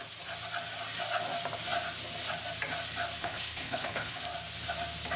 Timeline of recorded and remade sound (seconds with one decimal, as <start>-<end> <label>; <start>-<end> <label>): 0.0-3.2 recorded; 3.2-4.2 remade; 4.2-5.2 recorded